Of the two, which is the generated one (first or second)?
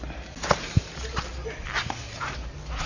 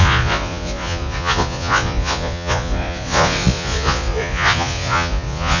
second